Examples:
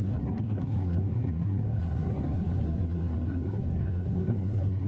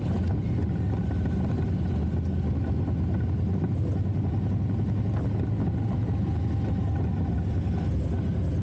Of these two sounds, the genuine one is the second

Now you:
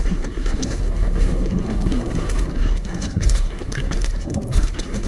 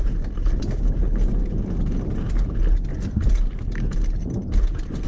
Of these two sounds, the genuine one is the second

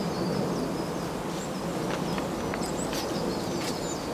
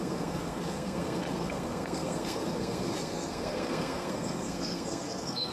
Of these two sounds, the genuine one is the first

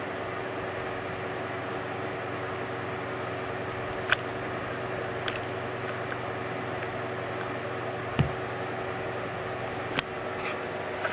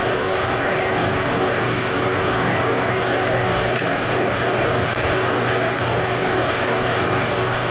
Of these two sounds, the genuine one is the first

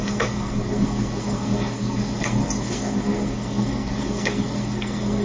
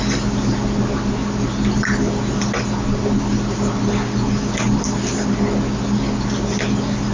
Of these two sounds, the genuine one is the second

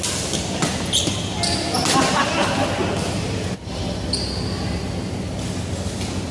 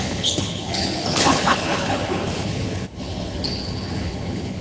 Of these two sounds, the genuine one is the first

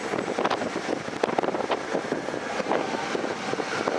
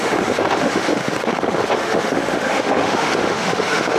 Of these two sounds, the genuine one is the first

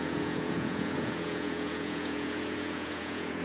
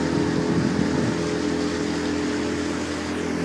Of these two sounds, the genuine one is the second